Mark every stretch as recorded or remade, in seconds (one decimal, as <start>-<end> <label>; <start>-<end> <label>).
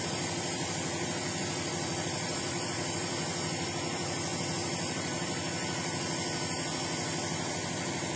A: 0.0-3.1 remade; 3.1-7.7 recorded; 7.7-8.2 remade